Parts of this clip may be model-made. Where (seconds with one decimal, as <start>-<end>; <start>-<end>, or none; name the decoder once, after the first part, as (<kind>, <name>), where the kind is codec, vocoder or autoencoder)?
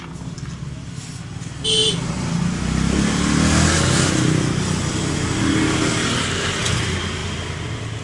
none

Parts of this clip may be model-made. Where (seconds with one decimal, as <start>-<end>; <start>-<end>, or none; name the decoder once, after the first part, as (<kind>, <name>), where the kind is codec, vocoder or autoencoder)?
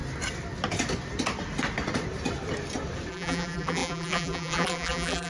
3.1-5.3 (vocoder, BigVGAN v2)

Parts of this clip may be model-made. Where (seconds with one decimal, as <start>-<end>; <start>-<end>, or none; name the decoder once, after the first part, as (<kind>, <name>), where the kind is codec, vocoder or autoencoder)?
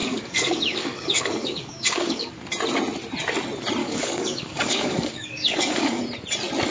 0.0-2.3 (codec, DAC); 3.8-6.0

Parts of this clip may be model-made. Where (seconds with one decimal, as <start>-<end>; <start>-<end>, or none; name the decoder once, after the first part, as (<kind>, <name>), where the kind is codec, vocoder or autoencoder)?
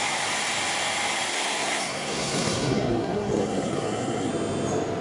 1.3-4.3 (codec, SNAC)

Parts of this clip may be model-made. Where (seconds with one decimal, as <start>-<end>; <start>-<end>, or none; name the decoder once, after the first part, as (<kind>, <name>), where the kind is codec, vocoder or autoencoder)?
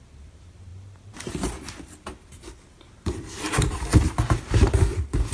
0.0-0.7 (vocoder, BigVGAN v2); 2.9-3.9; 4.7-5.3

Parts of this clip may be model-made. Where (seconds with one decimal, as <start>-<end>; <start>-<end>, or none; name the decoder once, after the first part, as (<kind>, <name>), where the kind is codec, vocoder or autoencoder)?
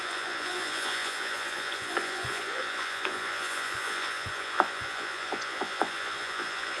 0.0-6.8 (vocoder, Vocos)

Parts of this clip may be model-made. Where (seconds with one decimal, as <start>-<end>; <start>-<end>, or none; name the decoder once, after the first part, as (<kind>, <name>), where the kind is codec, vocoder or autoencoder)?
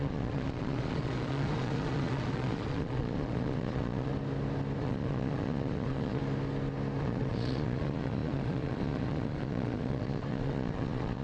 0.0-4.1 (vocoder, Vocos); 4.8-6.2; 7.0-11.2